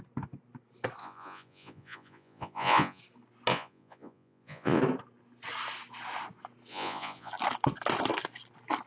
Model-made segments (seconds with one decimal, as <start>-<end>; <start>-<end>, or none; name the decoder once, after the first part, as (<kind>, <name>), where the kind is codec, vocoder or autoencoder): 1.0-3.0 (vocoder, Vocos); 3.5-4.8; 6.7-7.3